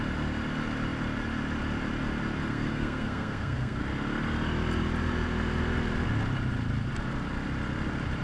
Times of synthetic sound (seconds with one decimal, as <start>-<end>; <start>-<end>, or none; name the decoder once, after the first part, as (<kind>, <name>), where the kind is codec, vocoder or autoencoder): 2.5-3.8 (codec, SNAC)